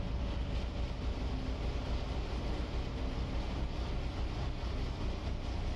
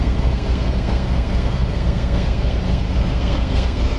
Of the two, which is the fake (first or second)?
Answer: second